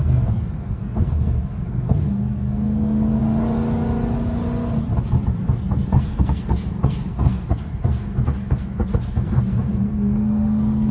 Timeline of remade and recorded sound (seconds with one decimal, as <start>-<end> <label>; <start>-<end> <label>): 0.0-3.2 remade; 3.2-5.5 recorded; 5.5-10.9 remade